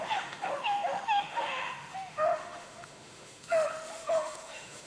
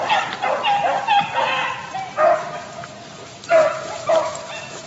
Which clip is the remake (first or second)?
first